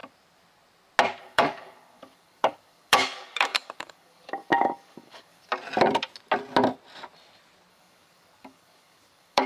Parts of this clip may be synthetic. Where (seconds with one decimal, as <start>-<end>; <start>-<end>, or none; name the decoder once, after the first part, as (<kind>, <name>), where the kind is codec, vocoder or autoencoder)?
1.2-5.5 (codec, DAC); 7.7-9.5

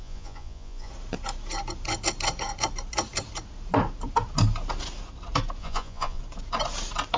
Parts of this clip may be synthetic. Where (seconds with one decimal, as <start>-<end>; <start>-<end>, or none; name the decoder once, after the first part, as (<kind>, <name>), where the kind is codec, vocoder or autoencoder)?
0.0-0.9 (vocoder, Vocos); 5.6-6.2

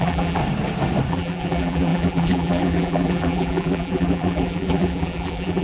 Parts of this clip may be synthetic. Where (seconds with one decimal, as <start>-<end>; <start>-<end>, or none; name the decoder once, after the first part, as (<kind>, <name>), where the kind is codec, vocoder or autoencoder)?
0.0-0.4 (vocoder, BigVGAN v2); 1.1-5.6